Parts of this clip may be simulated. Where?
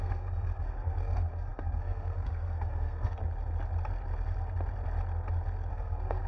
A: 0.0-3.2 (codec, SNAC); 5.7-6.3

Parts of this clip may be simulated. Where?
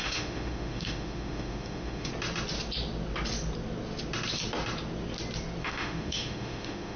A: 0.0-2.1 (autoencoder, DAC-VAE); 5.6-7.0